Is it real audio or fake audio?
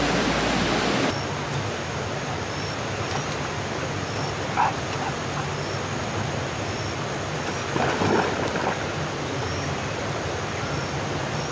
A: real